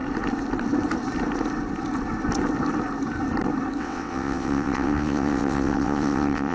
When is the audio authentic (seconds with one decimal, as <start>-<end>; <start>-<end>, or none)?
0.0-3.8